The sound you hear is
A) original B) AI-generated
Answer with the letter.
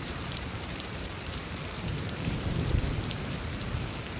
B